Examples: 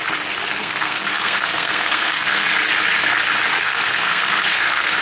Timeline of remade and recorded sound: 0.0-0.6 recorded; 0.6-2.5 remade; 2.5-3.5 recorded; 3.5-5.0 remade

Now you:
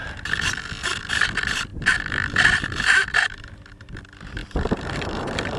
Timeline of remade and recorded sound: 0.0-1.0 remade; 1.0-1.7 recorded; 1.7-3.8 remade; 3.8-4.4 recorded; 4.4-5.6 remade

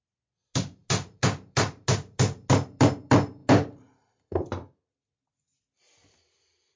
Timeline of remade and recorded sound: 0.0-6.8 recorded